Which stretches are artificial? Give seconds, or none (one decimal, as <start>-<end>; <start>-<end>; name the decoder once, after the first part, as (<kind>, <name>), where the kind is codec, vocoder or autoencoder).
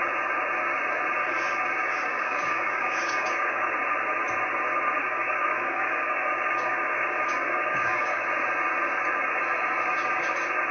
1.8-3.7 (codec, DAC); 5.0-8.2